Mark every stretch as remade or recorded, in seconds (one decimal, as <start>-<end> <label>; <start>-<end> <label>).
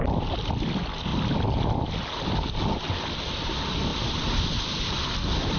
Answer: 0.0-5.6 recorded